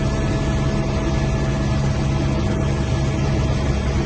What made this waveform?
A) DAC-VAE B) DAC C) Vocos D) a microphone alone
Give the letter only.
D